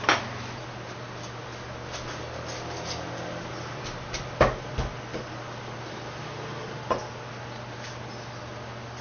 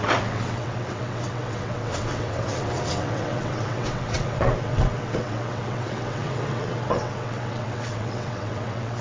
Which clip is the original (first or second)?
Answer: first